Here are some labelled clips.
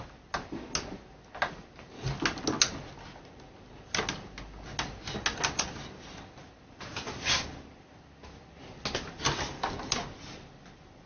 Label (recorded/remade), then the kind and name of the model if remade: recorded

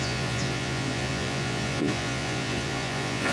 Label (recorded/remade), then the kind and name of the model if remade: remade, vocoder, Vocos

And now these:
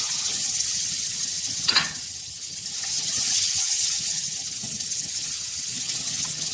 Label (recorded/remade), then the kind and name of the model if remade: remade, vocoder, HiFi-GAN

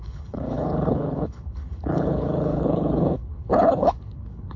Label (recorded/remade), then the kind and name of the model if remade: remade, codec, HILCodec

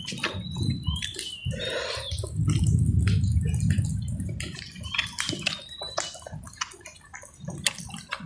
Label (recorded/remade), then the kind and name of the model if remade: recorded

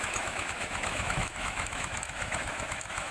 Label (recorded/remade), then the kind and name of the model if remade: remade, autoencoder, DAC-VAE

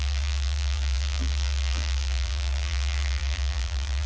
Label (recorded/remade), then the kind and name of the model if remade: remade, vocoder, BigVGAN v2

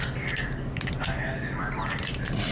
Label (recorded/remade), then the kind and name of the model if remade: remade, vocoder, BigVGAN v2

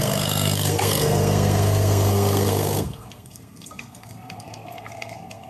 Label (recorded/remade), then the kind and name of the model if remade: remade, codec, SNAC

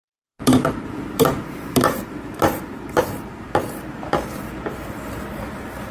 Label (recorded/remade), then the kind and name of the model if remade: remade, vocoder, BigVGAN v2